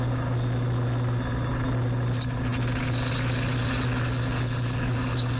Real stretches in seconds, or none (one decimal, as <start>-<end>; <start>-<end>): 0.0-5.4